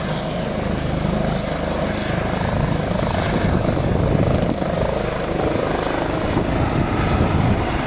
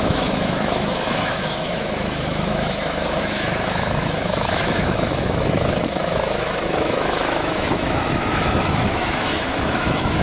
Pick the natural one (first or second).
first